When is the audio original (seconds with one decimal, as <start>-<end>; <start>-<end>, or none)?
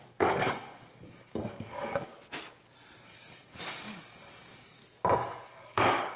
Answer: 2.1-3.0; 4.8-5.5